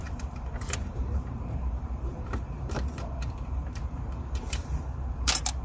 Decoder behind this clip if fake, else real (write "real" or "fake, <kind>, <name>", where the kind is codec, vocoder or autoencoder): fake, vocoder, BigVGAN v2